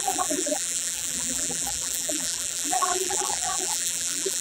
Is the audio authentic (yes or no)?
no